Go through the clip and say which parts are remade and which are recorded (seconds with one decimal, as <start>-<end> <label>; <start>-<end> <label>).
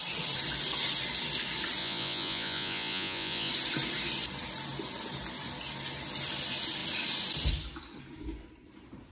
0.0-1.8 recorded; 1.8-3.5 remade; 3.5-9.1 recorded